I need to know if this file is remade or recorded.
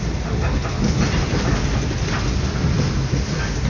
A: recorded